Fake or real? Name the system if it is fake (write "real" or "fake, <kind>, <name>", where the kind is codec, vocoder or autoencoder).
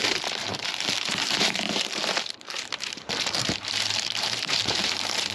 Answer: fake, vocoder, BigVGAN v2